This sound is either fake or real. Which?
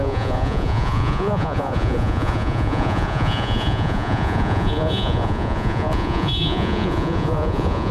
fake